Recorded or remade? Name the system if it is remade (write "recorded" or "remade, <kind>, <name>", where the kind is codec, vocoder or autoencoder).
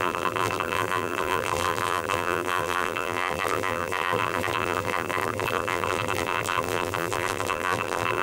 remade, vocoder, BigVGAN v2